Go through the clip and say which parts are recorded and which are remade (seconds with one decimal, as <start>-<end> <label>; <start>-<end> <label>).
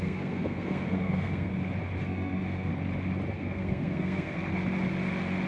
0.0-1.5 remade; 1.5-2.0 recorded; 2.0-2.7 remade; 2.7-3.3 recorded; 3.3-4.4 remade; 4.4-5.5 recorded